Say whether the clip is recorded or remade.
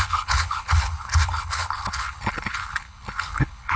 remade